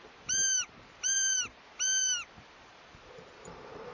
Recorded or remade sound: remade